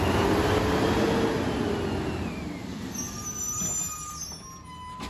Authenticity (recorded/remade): recorded